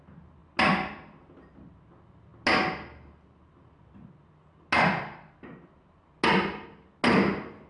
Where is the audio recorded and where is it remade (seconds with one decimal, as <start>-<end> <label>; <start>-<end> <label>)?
0.0-7.7 recorded